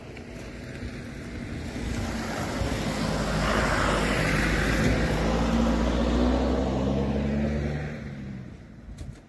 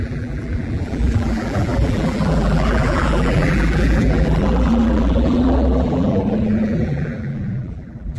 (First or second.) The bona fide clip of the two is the first